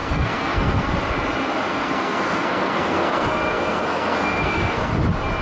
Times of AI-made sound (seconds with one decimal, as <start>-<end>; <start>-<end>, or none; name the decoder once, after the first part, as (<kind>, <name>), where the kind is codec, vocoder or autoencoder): 0.0-0.9 (codec, SNAC); 1.7-4.9